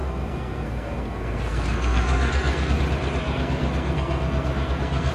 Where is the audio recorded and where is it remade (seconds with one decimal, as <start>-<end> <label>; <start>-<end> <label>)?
0.0-2.8 remade; 2.8-3.2 recorded; 3.2-5.1 remade